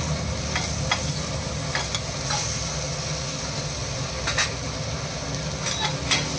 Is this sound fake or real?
real